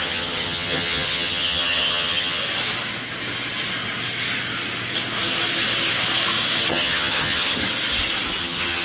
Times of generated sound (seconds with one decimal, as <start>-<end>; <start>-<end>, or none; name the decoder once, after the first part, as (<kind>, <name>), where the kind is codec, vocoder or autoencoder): 0.0-2.4 (vocoder, HiFi-GAN); 6.7-7.6; 8.4-8.8